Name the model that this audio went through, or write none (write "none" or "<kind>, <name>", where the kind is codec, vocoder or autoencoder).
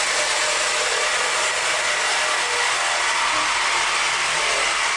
none